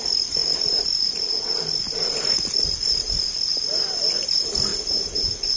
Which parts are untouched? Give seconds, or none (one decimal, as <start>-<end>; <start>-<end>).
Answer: 0.4-1.6; 3.5-4.0; 4.7-5.6